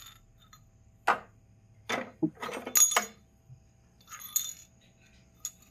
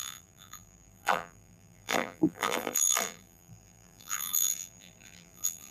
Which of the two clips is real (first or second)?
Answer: first